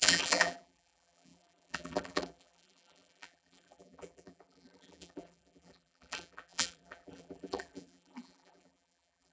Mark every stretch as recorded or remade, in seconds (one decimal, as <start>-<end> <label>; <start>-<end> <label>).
0.0-9.3 remade